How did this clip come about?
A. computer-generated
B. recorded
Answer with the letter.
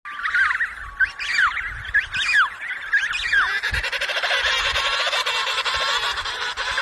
B